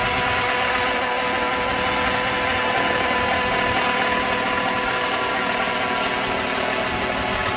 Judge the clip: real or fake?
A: real